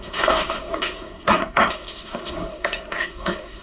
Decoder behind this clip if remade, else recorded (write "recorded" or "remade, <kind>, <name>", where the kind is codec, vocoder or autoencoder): remade, codec, SNAC